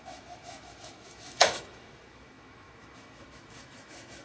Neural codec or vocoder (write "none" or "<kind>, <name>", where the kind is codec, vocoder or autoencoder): autoencoder, DAC-VAE